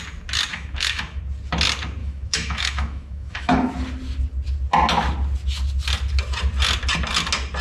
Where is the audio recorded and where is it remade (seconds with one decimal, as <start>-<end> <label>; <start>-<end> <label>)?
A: 0.0-0.5 recorded; 0.5-1.2 remade; 1.2-2.0 recorded; 2.0-3.7 remade; 3.7-7.6 recorded